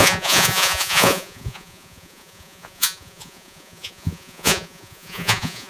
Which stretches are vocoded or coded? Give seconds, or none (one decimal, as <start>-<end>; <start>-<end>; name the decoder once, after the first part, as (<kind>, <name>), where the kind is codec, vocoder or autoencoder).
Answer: 0.0-5.7 (vocoder, Vocos)